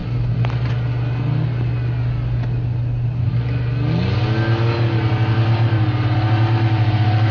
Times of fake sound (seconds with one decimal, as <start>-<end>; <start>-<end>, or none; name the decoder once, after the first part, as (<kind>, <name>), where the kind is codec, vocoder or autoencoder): none